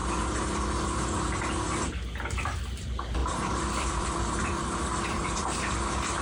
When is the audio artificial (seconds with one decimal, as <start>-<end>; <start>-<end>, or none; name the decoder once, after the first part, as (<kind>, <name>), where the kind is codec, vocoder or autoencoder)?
3.2-5.6 (vocoder, BigVGAN v2)